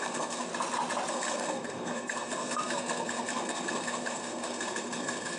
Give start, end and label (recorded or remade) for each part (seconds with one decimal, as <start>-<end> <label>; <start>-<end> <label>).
0.0-0.5 remade; 0.5-1.1 recorded; 1.1-5.4 remade